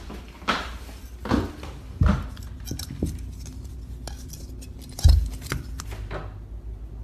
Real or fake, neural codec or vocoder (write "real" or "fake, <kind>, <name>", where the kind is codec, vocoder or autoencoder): real